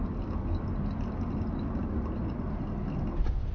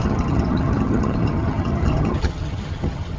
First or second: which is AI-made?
second